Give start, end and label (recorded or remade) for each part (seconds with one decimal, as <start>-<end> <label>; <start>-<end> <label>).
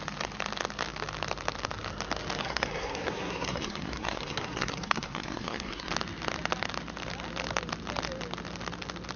0.0-2.4 recorded; 2.4-5.9 remade; 5.9-9.2 recorded